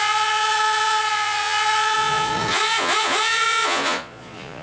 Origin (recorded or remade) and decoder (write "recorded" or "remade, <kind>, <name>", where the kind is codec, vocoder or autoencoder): remade, vocoder, Vocos